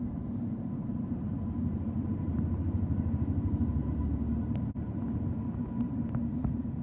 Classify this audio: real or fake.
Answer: fake